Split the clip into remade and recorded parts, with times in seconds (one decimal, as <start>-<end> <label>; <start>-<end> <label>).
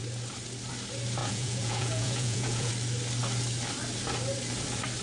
0.0-1.2 recorded; 1.2-2.7 remade; 2.7-5.0 recorded